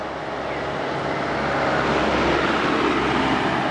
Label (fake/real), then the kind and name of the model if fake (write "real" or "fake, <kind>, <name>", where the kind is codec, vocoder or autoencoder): real